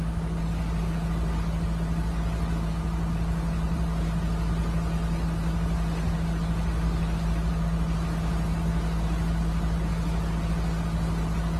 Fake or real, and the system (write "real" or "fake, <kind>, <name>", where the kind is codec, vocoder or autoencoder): real